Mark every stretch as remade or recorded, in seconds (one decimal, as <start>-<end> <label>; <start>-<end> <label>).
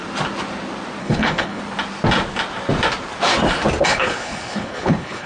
0.0-1.0 recorded; 1.0-1.6 remade; 1.6-3.9 recorded; 3.9-5.3 remade